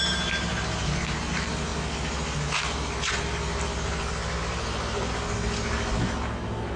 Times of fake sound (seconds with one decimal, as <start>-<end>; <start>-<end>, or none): none